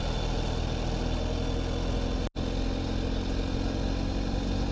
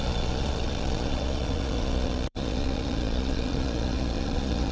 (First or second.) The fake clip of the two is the second